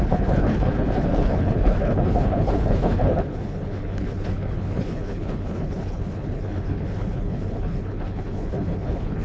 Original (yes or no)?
no